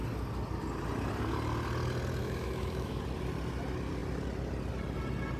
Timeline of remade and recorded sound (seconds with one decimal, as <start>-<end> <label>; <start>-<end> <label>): 0.0-2.2 recorded; 2.2-3.0 remade; 3.0-5.4 recorded